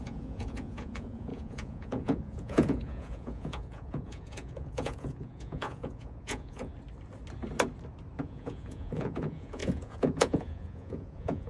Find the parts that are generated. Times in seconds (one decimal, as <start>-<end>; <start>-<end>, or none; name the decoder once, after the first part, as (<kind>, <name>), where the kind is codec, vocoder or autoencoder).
0.0-6.7 (vocoder, Vocos); 8.2-11.5